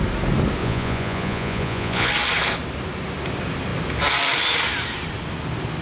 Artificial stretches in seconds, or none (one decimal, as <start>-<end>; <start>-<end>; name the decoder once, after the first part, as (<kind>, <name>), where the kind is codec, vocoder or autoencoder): 0.6-2.1 (vocoder, Vocos)